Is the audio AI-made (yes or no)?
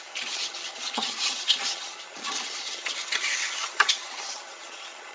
yes